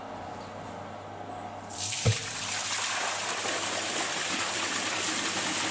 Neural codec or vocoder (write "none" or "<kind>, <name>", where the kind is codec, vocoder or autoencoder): none